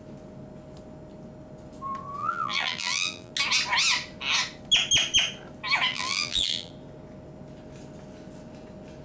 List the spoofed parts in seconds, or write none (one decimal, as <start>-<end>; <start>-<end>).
2.2-3.3; 5.9-6.7